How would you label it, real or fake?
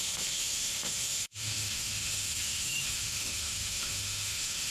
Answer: fake